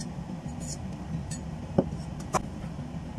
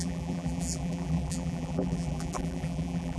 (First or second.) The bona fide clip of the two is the first